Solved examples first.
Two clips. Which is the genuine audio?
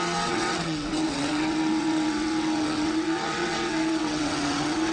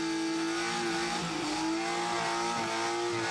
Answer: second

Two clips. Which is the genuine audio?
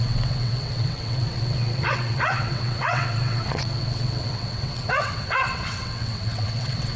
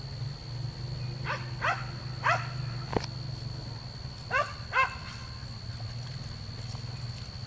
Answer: second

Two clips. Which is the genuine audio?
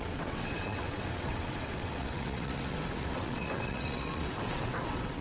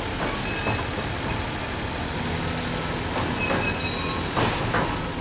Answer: second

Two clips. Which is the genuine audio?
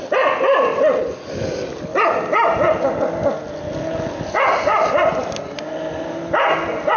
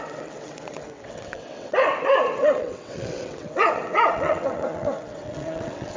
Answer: first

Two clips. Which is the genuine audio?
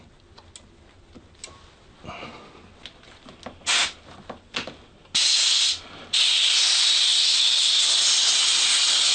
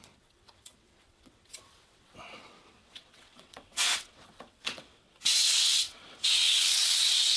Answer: first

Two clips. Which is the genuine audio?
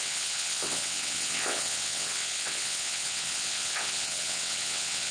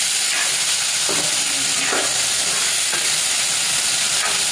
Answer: second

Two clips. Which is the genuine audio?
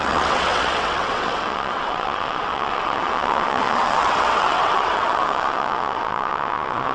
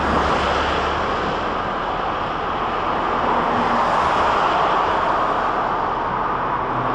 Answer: second